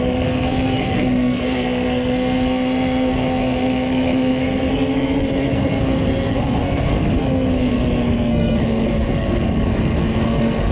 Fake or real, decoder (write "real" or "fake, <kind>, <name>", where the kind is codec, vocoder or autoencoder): fake, codec, SNAC